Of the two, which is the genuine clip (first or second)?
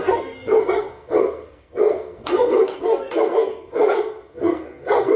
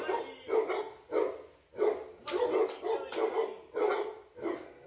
second